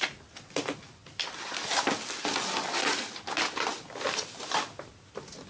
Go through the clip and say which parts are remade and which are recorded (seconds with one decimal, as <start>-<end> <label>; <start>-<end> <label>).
0.0-5.5 recorded